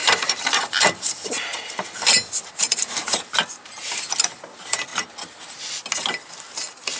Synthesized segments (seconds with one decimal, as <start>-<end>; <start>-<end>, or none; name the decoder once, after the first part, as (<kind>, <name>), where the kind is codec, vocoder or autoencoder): 0.0-1.7 (vocoder, BigVGAN v2); 2.4-4.0